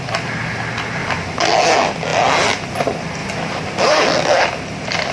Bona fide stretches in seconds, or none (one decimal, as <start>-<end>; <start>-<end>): 0.0-5.1